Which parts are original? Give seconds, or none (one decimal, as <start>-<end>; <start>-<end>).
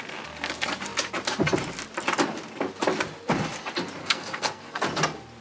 0.0-4.0; 4.8-5.4